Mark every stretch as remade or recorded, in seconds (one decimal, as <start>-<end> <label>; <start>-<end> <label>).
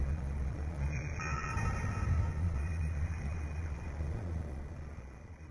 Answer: 0.0-1.5 remade; 1.5-2.3 recorded; 2.3-5.5 remade